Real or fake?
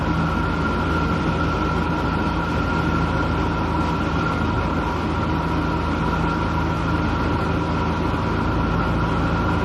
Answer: real